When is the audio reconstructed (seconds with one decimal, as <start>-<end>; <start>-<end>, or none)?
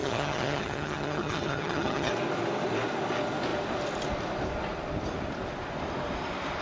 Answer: 0.0-2.1